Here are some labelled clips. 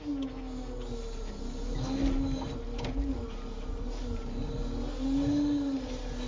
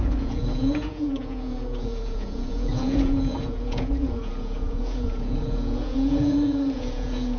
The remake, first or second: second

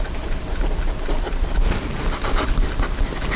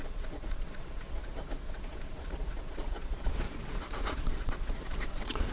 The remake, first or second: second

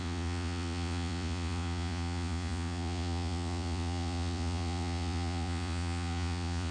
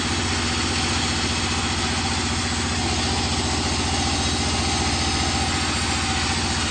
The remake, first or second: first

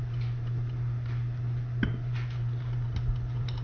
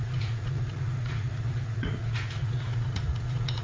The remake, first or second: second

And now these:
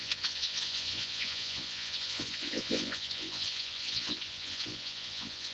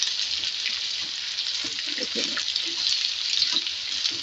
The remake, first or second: first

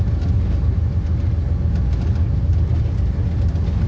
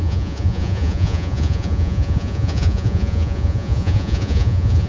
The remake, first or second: second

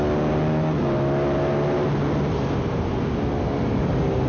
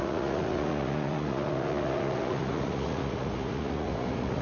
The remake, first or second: second